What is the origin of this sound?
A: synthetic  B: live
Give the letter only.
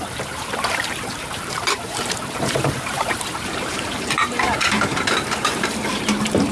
A